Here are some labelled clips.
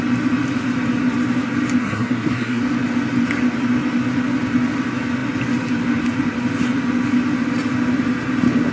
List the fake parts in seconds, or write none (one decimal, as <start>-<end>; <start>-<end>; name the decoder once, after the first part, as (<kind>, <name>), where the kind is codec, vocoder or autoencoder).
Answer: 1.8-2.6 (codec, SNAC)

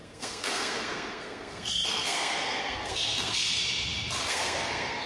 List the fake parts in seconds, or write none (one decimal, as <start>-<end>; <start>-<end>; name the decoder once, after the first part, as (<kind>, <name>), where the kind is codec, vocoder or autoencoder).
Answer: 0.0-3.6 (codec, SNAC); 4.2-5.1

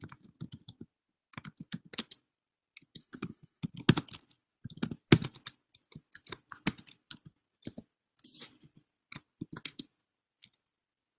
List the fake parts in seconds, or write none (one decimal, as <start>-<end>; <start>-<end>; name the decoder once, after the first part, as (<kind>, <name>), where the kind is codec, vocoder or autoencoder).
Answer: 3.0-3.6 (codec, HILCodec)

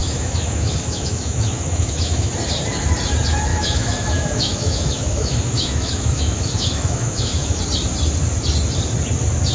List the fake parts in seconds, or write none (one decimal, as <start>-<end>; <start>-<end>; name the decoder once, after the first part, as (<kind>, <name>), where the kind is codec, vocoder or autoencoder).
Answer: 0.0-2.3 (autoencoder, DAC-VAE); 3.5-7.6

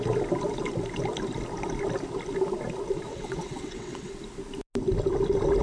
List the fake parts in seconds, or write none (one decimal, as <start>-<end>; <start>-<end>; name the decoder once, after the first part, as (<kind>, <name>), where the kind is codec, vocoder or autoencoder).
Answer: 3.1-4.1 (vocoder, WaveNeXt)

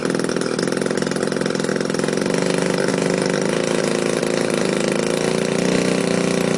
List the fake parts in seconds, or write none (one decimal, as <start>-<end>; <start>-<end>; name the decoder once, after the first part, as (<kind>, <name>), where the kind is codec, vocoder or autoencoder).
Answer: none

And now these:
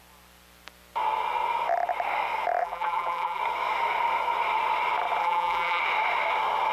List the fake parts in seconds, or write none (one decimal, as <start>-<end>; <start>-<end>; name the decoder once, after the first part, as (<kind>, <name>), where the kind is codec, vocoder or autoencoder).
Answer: 2.6-3.4 (vocoder, BigVGAN v2); 5.2-5.8